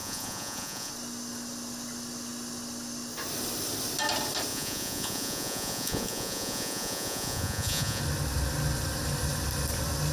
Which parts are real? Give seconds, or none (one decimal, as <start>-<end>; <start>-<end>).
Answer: 0.9-4.5; 8.0-10.1